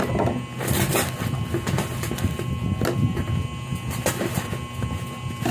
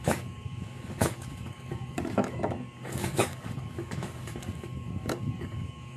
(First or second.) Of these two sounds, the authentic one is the first